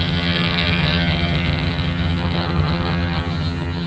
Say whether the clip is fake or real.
fake